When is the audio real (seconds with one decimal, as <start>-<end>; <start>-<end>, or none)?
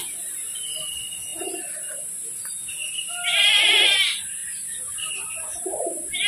0.0-6.3